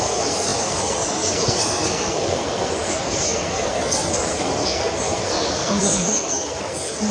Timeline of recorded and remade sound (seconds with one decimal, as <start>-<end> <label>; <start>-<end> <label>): 0.0-7.1 remade